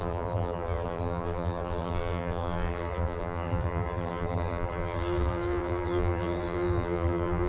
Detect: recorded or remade remade